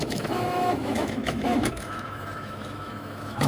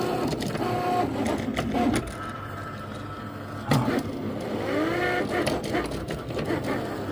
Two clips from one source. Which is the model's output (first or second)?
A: first